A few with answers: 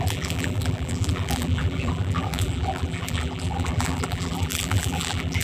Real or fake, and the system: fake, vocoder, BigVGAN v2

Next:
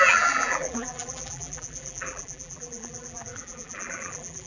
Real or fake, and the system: fake, vocoder, BigVGAN v2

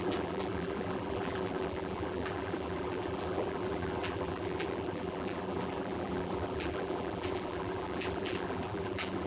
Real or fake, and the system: fake, vocoder, BigVGAN v2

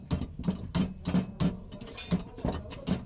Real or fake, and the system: real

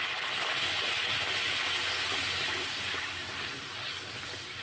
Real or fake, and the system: real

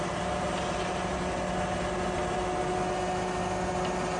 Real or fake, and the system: real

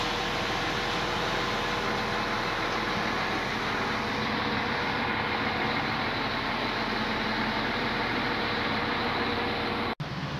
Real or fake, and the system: real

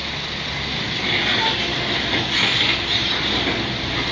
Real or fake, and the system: real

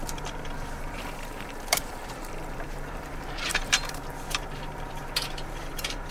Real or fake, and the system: fake, vocoder, BigVGAN v2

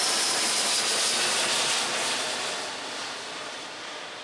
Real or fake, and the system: real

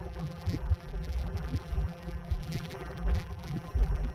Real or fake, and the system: fake, vocoder, BigVGAN v2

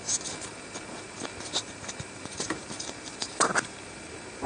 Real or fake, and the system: fake, vocoder, BigVGAN v2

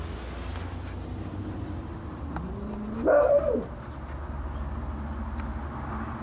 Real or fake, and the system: real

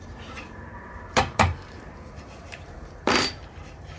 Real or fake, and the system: fake, vocoder, BigVGAN v2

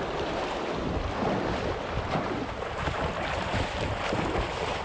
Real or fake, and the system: fake, vocoder, BigVGAN v2